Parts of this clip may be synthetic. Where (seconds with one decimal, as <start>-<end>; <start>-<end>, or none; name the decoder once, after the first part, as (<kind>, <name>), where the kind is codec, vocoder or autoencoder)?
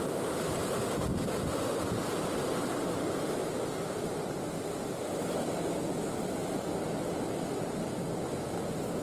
none